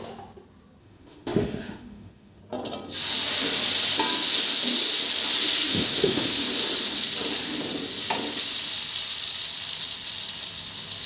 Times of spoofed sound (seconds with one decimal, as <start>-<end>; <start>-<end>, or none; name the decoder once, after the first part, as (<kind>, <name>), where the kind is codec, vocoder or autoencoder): 0.8-2.4 (autoencoder, DAC-VAE); 5.7-6.3